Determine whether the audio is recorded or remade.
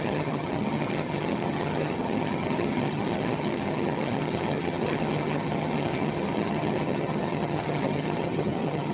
remade